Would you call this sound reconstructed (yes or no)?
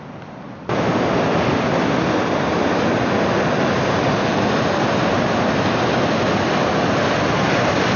no